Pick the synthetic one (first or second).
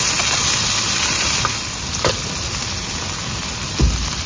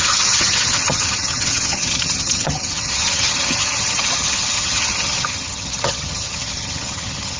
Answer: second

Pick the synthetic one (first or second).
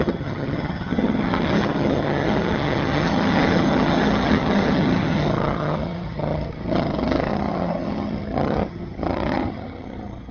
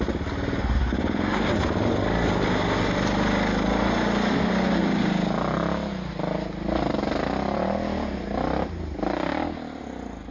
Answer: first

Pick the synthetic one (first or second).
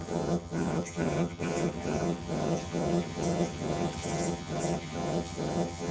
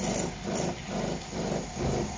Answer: first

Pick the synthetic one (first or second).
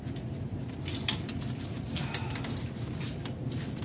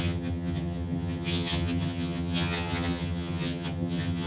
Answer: second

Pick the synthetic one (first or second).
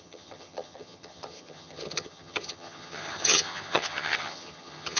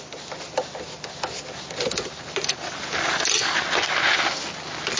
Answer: first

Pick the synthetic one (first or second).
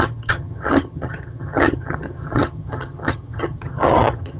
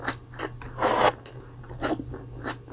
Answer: first